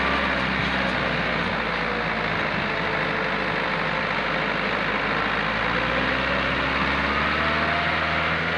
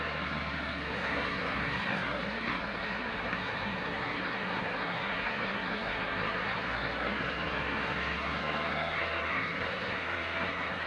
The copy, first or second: second